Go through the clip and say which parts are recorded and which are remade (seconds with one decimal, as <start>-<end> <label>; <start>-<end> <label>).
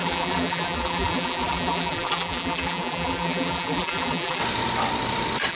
0.0-4.4 remade; 4.4-5.5 recorded